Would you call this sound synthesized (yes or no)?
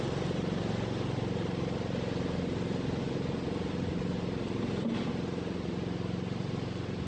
no